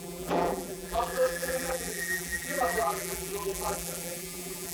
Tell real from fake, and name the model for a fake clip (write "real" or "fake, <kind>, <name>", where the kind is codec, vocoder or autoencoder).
fake, vocoder, BigVGAN v2